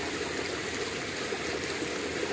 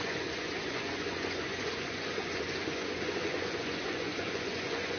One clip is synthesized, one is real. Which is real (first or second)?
first